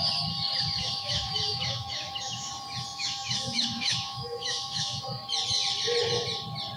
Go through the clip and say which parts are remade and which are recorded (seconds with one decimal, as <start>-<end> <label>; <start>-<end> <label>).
0.0-0.8 recorded; 0.8-2.5 remade; 2.5-2.9 recorded; 2.9-5.0 remade; 5.0-6.8 recorded

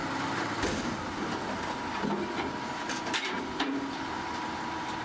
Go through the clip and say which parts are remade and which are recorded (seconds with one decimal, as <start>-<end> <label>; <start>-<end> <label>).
0.0-3.0 recorded; 3.0-5.0 remade

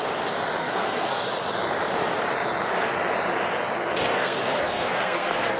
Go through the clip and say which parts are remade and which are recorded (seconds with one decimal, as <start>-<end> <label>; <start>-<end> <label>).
0.0-0.6 recorded; 0.6-1.3 remade; 1.3-4.1 recorded; 4.1-5.6 remade